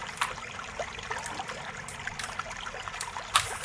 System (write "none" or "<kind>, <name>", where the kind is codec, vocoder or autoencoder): none